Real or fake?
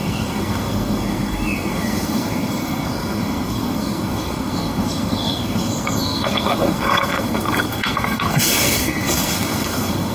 fake